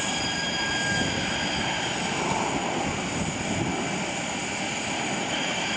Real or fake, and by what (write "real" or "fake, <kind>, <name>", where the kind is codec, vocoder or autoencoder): real